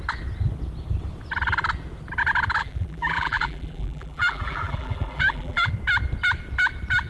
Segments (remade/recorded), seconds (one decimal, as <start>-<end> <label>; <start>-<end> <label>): 0.0-2.6 recorded; 2.6-5.7 remade; 5.7-7.1 recorded

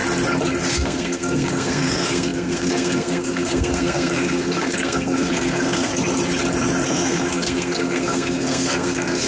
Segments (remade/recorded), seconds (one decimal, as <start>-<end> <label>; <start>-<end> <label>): 0.0-0.7 recorded; 0.7-5.9 remade; 5.9-6.9 recorded; 6.9-9.3 remade

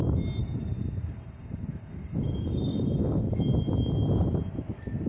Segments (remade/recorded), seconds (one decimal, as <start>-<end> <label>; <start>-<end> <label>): 0.0-0.4 recorded; 0.4-3.0 remade; 3.0-5.1 recorded

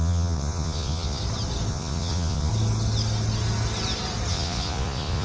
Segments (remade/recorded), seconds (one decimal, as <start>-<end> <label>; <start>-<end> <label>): 0.0-1.2 remade; 1.2-1.7 recorded; 1.7-2.5 remade; 2.5-4.3 recorded; 4.3-5.2 remade